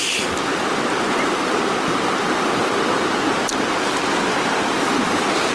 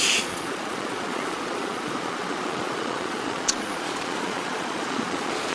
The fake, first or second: second